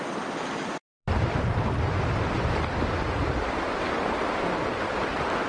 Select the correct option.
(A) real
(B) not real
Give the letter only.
A